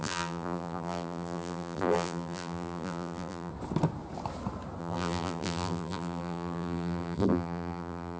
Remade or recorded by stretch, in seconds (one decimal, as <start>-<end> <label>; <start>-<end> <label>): 0.0-3.5 remade; 3.5-4.8 recorded; 4.8-8.2 remade